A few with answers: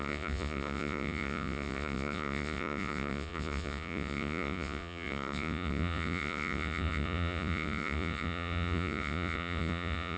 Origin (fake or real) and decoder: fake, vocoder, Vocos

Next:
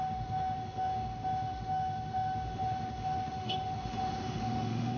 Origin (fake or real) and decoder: fake, autoencoder, DAC-VAE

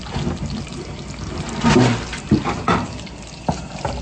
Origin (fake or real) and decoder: real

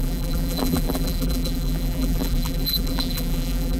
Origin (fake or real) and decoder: fake, vocoder, BigVGAN v2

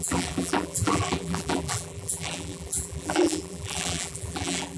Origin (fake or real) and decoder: fake, vocoder, BigVGAN v2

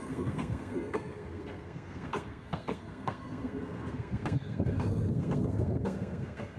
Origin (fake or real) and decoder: fake, codec, SNAC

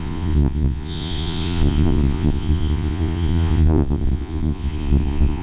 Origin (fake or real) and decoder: fake, vocoder, Vocos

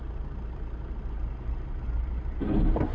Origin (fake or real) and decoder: real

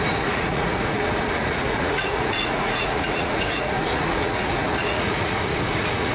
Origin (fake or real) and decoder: fake, vocoder, Vocos